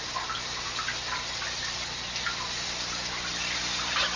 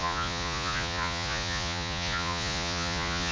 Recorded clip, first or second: first